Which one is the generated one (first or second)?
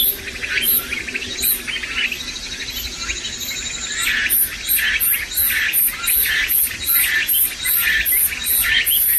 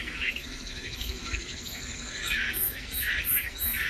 second